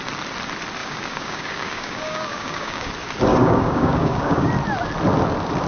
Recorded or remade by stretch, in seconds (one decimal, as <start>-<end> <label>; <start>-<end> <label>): 0.0-0.8 recorded; 0.8-2.9 remade; 2.9-3.3 recorded; 3.3-4.5 remade; 4.5-5.7 recorded